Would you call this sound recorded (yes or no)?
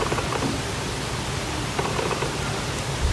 yes